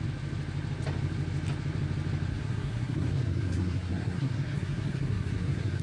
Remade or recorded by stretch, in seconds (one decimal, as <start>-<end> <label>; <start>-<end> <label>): 0.0-2.3 recorded; 2.3-5.8 remade